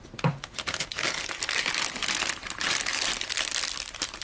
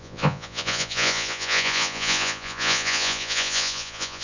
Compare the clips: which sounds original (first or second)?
first